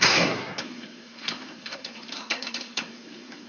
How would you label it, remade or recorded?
remade